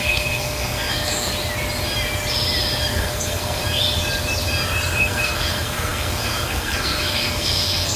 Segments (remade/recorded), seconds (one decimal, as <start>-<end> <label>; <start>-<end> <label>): 0.0-1.3 remade; 1.3-2.9 recorded; 2.9-3.6 remade; 3.6-5.0 recorded; 5.0-8.0 remade